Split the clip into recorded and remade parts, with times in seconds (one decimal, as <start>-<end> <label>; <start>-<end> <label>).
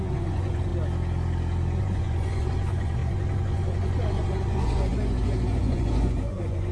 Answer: 0.0-0.7 remade; 0.7-1.8 recorded; 1.8-6.7 remade